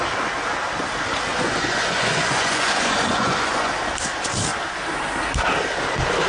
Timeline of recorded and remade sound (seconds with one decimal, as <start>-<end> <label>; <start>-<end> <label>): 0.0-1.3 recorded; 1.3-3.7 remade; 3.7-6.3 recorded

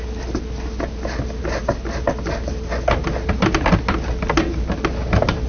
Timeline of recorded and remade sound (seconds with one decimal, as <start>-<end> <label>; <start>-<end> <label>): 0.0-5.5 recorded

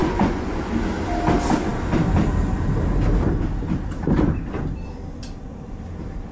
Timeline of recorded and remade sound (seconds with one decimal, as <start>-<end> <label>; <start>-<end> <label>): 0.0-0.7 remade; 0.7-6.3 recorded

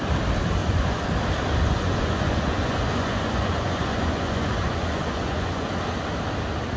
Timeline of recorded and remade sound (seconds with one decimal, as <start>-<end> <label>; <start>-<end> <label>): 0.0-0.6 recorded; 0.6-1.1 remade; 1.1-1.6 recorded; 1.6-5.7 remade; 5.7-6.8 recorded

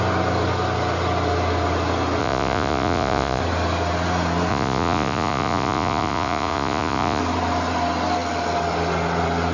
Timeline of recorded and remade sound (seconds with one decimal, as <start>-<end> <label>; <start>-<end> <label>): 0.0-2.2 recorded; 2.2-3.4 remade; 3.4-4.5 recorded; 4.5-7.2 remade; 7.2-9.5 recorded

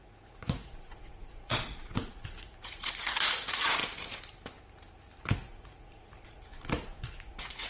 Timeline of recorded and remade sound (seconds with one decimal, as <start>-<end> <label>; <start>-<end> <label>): 0.0-3.8 remade; 3.8-5.2 recorded; 5.2-7.7 remade

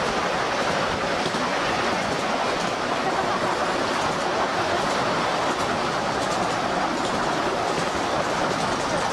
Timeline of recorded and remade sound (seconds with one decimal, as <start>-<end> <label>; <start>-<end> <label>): 0.0-1.5 recorded; 1.5-2.6 remade; 2.6-9.1 recorded